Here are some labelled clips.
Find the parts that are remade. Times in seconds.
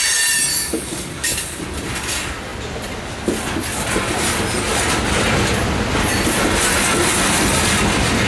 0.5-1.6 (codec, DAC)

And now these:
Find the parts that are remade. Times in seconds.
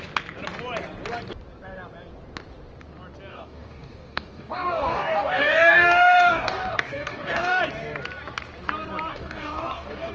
3.3-7.6 (codec, DAC); 9.1-10.1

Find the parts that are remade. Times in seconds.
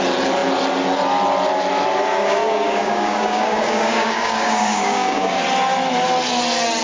2.1-5.4 (codec, DAC)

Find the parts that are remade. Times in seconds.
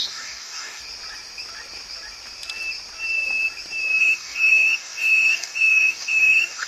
0.0-0.8 (codec, DAC); 4.0-6.7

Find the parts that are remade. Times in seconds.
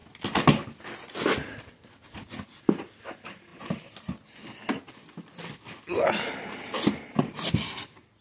none